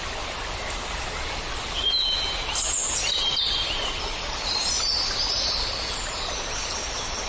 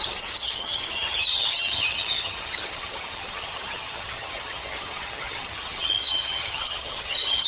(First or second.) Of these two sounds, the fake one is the second